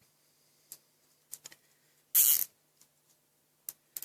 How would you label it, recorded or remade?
recorded